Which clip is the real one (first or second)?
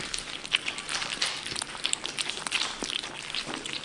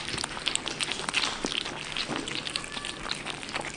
second